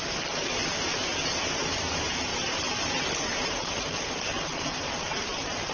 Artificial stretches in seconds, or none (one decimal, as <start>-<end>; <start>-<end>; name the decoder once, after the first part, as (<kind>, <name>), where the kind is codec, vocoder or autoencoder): 2.3-5.7 (vocoder, BigVGAN v2)